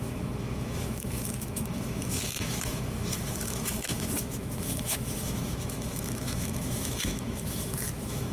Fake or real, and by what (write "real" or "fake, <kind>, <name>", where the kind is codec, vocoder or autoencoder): fake, autoencoder, DAC-VAE